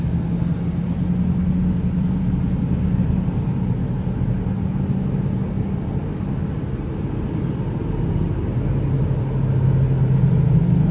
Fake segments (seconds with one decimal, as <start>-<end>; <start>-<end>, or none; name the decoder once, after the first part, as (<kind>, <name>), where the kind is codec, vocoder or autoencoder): none